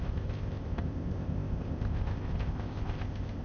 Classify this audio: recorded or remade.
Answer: remade